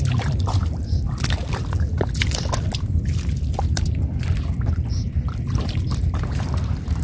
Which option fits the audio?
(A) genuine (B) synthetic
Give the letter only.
B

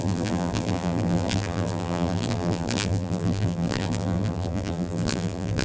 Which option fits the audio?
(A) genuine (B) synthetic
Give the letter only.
B